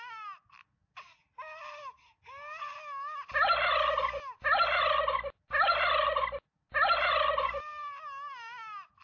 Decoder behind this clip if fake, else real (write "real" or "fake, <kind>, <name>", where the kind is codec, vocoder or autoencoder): real